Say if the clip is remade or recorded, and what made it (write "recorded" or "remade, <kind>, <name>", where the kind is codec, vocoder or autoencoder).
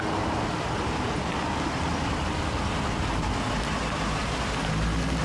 recorded